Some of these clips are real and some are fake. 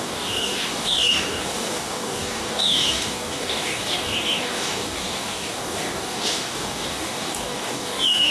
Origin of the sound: fake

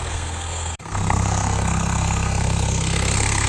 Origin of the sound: fake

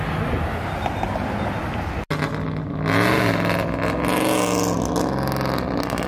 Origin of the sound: real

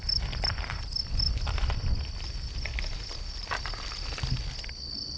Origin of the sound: real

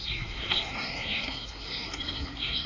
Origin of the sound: fake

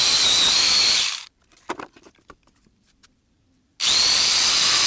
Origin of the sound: real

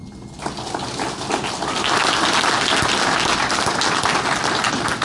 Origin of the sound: real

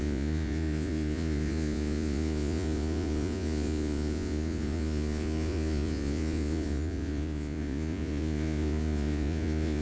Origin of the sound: fake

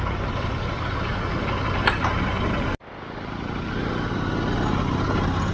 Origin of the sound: real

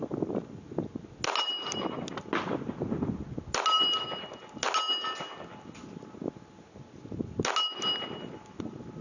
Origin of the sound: real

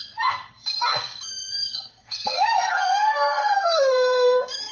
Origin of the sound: fake